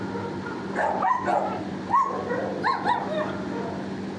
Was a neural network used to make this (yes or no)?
no